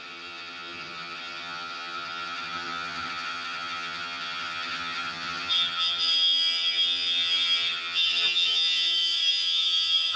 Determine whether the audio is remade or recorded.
remade